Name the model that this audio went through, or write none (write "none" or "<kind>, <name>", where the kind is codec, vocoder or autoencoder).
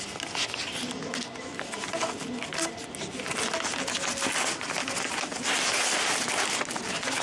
none